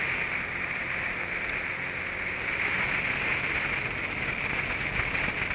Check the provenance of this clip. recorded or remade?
recorded